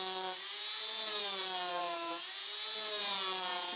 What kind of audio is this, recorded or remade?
remade